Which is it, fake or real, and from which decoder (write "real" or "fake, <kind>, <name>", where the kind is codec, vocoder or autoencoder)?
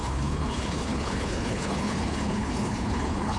fake, codec, HILCodec